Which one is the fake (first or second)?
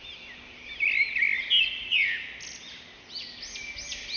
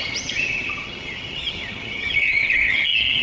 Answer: second